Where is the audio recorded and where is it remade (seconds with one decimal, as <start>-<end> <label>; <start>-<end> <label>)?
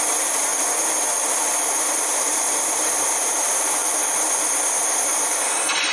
0.0-0.5 remade; 0.5-1.5 recorded; 1.5-3.8 remade; 3.8-4.9 recorded; 4.9-5.9 remade